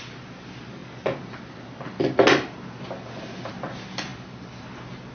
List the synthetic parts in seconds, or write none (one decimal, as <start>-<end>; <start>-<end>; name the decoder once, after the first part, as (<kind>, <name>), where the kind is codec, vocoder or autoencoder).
none